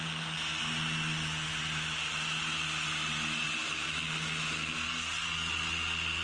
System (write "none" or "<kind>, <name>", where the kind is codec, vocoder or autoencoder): none